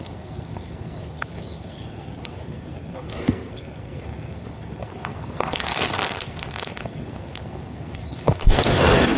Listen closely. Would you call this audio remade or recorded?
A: remade